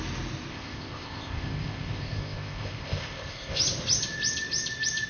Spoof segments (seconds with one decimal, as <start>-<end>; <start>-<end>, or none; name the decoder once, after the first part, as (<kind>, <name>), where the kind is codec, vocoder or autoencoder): 0.5-3.6 (codec, ZipCodec)